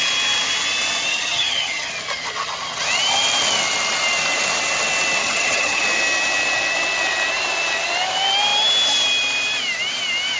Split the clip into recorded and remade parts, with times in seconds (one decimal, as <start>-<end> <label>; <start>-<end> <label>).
0.0-1.1 recorded; 1.1-1.9 remade; 1.9-5.2 recorded; 5.2-5.8 remade; 5.8-10.4 recorded